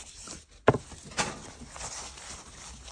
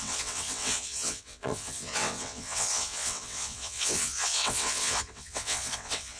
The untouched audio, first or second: first